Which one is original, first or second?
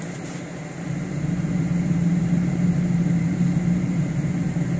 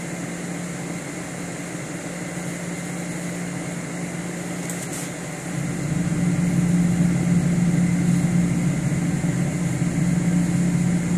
second